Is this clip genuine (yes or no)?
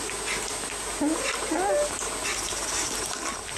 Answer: yes